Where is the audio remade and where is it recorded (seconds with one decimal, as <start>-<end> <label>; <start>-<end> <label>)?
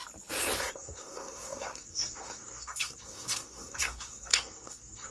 0.0-0.7 recorded; 0.7-5.1 remade